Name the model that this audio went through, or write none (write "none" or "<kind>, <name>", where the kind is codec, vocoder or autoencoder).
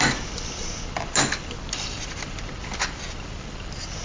none